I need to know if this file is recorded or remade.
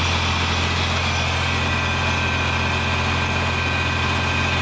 recorded